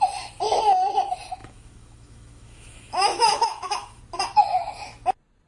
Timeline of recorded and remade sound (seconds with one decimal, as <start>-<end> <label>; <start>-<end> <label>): 0.0-1.4 recorded; 1.4-4.0 remade; 4.0-5.5 recorded